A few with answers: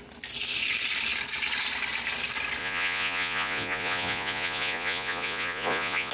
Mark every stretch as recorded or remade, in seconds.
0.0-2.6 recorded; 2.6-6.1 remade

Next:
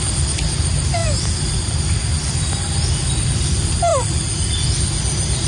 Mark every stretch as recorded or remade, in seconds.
0.0-5.5 recorded